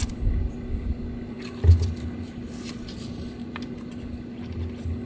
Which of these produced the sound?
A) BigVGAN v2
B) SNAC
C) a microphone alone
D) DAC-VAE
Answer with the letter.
C